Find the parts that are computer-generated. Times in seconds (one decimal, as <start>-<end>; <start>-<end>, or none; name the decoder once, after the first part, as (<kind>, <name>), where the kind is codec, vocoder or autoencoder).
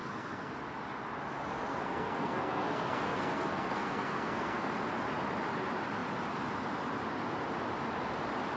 0.0-0.5 (codec, SNAC); 1.7-4.7